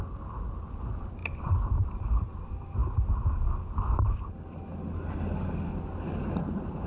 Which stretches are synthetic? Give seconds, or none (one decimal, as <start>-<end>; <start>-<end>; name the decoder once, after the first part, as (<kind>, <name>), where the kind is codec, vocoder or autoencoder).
1.2-2.0 (vocoder, BigVGAN v2)